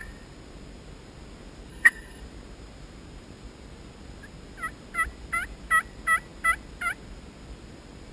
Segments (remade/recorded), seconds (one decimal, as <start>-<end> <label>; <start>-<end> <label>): 0.0-1.7 recorded; 1.7-2.2 remade; 2.2-8.1 recorded